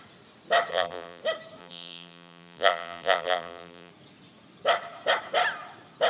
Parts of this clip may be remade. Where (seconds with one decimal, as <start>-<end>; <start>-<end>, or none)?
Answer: 0.7-1.2; 1.6-3.9